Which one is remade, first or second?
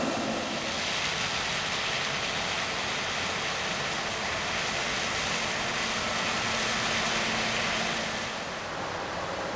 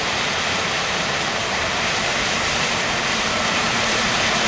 second